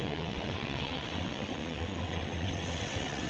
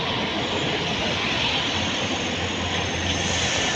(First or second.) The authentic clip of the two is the second